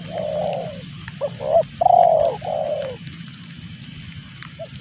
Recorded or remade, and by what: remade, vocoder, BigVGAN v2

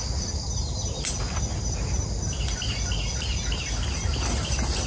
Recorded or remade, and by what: recorded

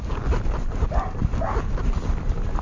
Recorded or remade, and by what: recorded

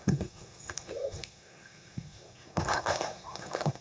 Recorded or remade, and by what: remade, codec, SNAC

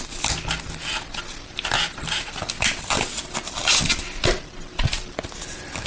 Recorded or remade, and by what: recorded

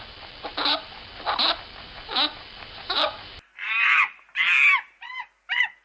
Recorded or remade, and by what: recorded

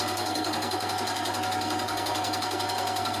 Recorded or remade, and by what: remade, codec, SNAC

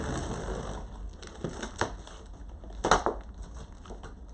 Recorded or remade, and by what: recorded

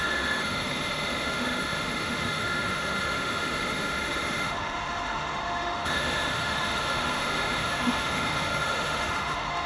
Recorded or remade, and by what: remade, autoencoder, DAC-VAE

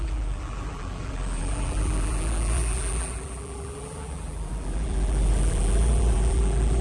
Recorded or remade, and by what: remade, vocoder, BigVGAN v2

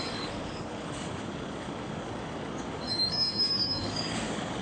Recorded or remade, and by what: remade, codec, DAC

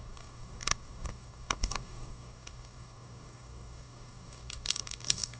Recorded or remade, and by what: remade, codec, DAC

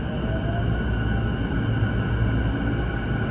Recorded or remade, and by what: recorded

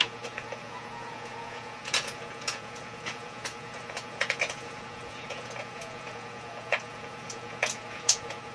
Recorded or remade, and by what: remade, vocoder, Vocos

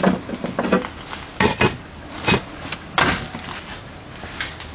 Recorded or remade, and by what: recorded